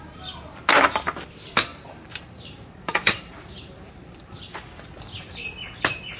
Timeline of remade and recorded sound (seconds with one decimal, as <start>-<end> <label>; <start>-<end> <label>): 0.0-1.7 recorded; 1.7-4.9 remade; 4.9-6.2 recorded